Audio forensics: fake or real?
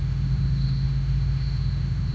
fake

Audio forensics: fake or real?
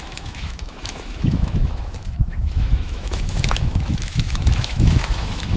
fake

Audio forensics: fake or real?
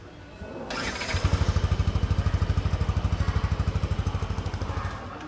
real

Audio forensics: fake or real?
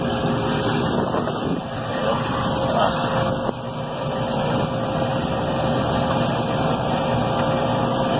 real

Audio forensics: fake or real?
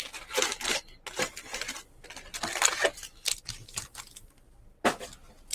real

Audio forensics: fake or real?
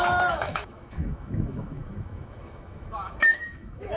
fake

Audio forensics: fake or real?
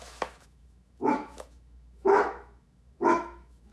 fake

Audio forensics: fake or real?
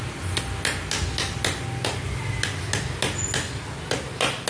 real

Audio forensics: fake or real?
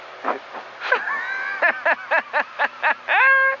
real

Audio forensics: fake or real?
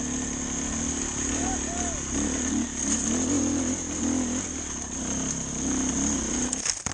real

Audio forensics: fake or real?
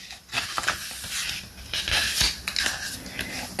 real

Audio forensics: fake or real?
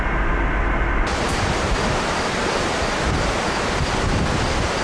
real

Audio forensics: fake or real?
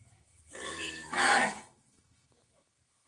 fake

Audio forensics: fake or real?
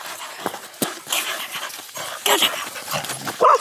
real